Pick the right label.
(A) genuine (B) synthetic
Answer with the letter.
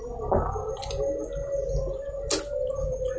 A